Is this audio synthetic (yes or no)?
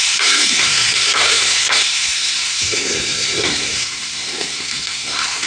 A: yes